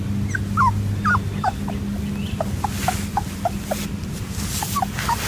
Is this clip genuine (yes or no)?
yes